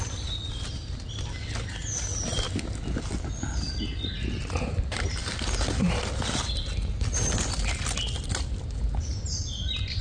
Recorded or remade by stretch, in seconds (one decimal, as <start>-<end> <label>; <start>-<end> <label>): 0.0-10.0 recorded